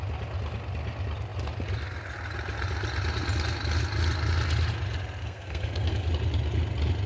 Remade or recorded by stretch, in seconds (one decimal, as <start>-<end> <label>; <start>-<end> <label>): 0.0-5.2 recorded; 5.2-6.1 remade; 6.1-7.1 recorded